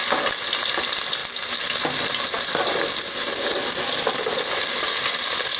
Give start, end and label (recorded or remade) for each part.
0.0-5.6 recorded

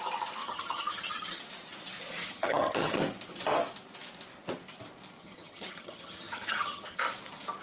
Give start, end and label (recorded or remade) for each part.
0.0-0.4 recorded; 0.4-1.4 remade; 1.4-2.2 recorded; 2.2-3.0 remade; 3.0-5.2 recorded; 5.2-7.0 remade; 7.0-7.6 recorded

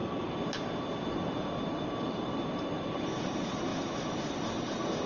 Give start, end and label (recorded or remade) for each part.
0.0-5.1 recorded

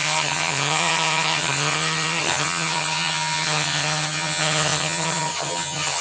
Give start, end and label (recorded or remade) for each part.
0.0-6.0 remade